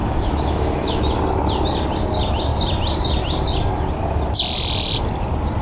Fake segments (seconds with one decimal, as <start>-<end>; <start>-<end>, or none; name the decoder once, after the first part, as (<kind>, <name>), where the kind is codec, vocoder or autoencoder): 0.0-1.1 (autoencoder, DAC-VAE)